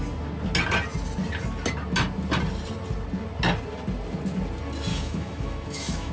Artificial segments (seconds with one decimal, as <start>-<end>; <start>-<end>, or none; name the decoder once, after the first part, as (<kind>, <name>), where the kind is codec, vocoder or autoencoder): 4.9-6.1 (autoencoder, DAC-VAE)